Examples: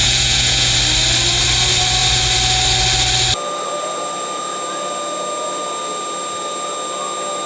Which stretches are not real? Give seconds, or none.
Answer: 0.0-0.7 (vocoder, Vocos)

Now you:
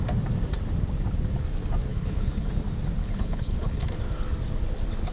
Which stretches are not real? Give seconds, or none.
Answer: 1.9-2.5 (codec, HILCodec); 3.0-3.9

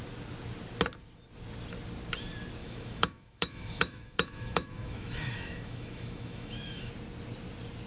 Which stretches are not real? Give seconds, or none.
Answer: 2.6-6.9 (autoencoder, DAC-VAE)